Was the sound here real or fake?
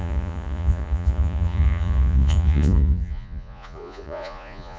fake